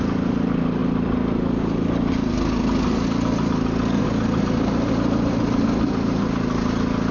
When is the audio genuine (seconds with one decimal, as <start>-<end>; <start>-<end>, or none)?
0.0-7.1

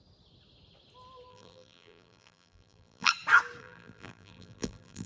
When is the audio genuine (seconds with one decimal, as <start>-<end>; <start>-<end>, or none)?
0.0-1.3; 3.1-3.6

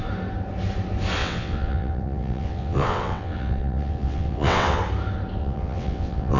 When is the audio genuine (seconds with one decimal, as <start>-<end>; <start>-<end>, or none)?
0.0-1.2; 4.8-5.4